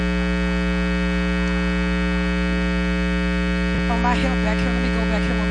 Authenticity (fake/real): real